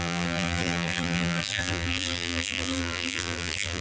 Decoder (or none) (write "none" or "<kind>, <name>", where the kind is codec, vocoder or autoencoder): vocoder, BigVGAN v2